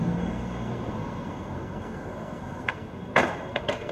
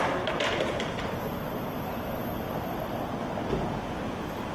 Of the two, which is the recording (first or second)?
second